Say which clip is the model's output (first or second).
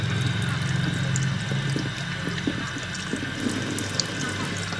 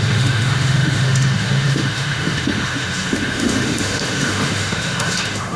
second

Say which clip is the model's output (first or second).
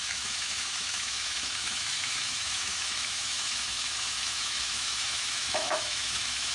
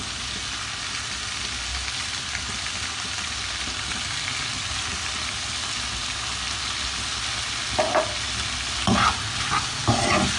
first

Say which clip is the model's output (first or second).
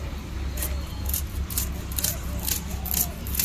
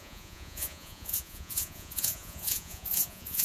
second